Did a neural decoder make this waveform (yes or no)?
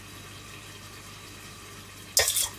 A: no